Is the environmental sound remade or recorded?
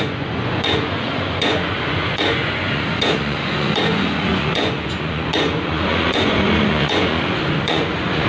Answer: remade